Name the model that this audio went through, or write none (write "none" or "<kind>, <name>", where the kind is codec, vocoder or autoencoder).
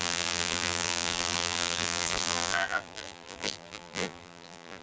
vocoder, BigVGAN v2